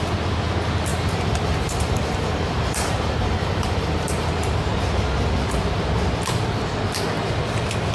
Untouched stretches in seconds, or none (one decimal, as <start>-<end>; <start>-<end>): 0.0-0.9; 4.3-7.9